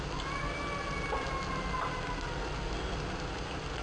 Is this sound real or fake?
real